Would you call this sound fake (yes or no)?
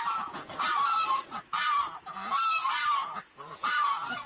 yes